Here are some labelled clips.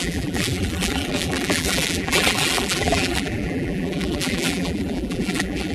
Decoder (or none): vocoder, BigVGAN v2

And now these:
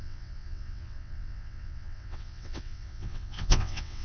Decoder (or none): vocoder, WaveNeXt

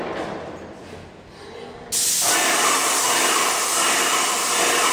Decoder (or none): none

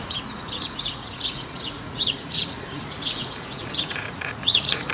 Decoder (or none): vocoder, Vocos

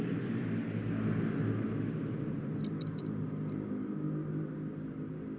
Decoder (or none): none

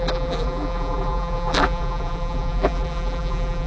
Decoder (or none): vocoder, BigVGAN v2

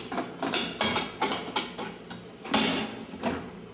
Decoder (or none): none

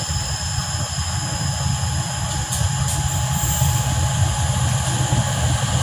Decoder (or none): none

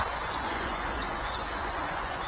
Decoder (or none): vocoder, Vocos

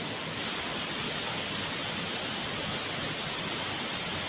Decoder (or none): none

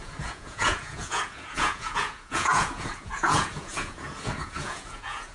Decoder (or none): vocoder, Vocos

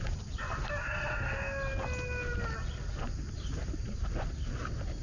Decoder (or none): none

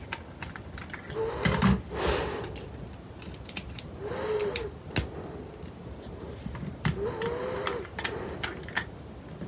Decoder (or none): none